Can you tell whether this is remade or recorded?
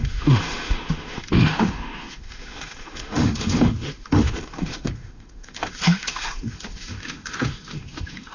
remade